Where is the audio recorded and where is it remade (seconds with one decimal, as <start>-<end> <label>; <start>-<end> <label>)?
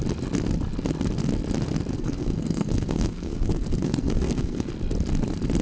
0.0-1.9 recorded; 1.9-4.7 remade; 4.7-5.6 recorded